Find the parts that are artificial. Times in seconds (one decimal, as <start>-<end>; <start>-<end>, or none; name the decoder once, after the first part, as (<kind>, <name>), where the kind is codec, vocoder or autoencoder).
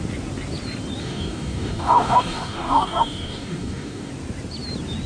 1.0-4.1 (codec, DAC)